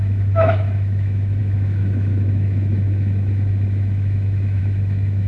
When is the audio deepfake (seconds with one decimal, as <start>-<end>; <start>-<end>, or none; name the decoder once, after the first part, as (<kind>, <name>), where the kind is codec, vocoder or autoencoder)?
0.0-5.3 (autoencoder, DAC-VAE)